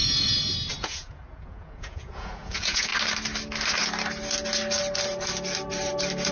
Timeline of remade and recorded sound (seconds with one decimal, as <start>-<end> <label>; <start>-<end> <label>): 0.0-0.8 recorded; 0.8-2.9 remade; 2.9-6.3 recorded